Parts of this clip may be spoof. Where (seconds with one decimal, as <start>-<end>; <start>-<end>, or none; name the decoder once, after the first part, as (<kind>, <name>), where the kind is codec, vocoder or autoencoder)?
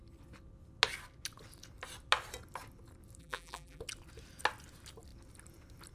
3.2-3.8 (vocoder, BigVGAN v2)